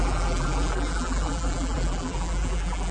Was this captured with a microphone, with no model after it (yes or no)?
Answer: no